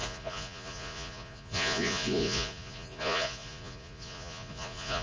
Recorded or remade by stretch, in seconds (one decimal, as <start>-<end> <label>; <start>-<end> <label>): 0.0-5.0 remade